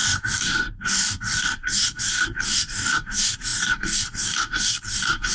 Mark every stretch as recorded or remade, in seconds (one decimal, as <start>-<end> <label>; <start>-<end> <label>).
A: 0.0-5.3 remade